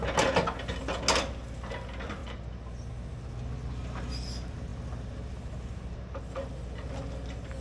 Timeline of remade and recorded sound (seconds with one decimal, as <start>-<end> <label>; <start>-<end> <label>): 0.0-7.6 recorded